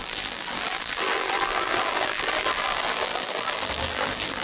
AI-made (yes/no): yes